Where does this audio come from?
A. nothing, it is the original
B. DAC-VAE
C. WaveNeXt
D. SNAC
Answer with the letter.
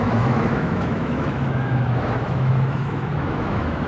B